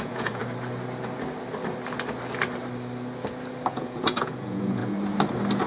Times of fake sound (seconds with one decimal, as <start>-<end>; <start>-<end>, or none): 0.0-0.4; 3.7-4.8